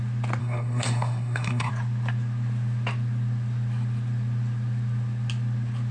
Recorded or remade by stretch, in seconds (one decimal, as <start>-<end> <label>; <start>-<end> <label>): 0.0-0.4 recorded; 0.4-1.7 remade; 1.7-5.9 recorded